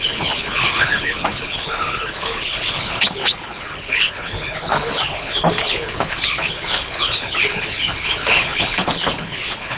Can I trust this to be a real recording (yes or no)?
no